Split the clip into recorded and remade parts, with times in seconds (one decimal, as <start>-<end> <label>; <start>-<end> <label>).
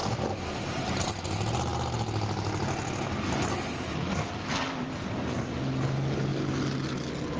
0.0-1.1 remade; 1.1-7.4 recorded